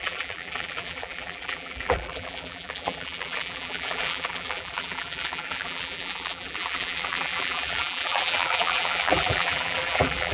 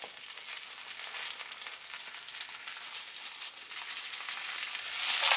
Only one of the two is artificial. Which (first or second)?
first